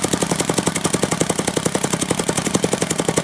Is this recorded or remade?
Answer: remade